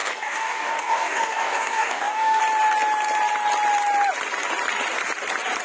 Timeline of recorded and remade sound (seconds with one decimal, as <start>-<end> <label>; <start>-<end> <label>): 0.0-2.4 remade; 2.4-5.6 recorded